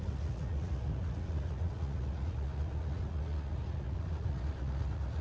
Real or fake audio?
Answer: fake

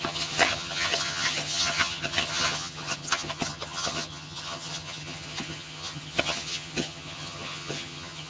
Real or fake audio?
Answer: fake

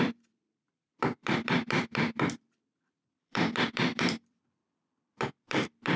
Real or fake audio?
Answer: fake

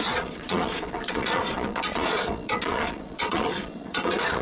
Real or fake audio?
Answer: fake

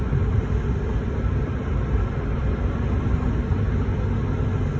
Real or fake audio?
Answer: real